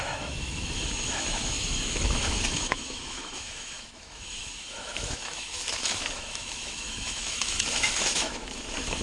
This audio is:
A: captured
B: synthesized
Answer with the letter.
B